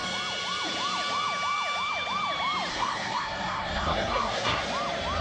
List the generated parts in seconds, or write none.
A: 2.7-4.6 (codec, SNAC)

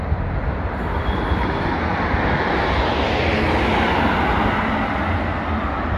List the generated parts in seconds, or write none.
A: none

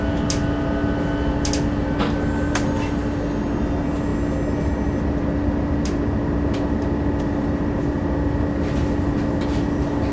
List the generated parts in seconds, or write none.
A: none

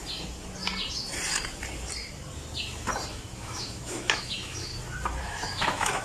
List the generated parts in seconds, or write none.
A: 3.1-4.7 (autoencoder, DAC-VAE); 5.2-6.0

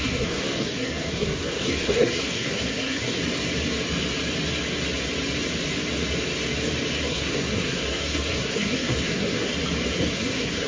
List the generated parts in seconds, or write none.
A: 0.0-3.2 (codec, SNAC); 7.1-9.5; 10.1-10.7

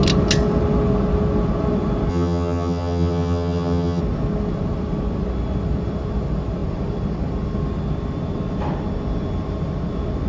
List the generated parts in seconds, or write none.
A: 2.1-4.0 (vocoder, HiFi-GAN)

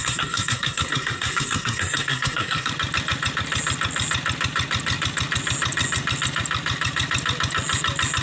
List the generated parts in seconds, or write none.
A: 0.0-2.7 (codec, SNAC)

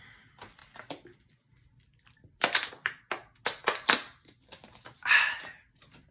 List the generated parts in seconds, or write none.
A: none